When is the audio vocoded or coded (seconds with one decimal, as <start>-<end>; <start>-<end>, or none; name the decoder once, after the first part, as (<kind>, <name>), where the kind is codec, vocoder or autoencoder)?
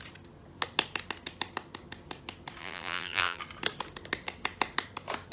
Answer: 2.6-3.4 (vocoder, BigVGAN v2)